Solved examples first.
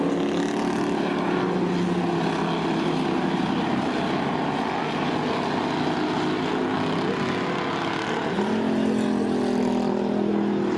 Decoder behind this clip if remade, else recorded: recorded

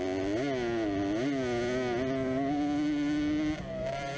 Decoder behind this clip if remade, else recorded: recorded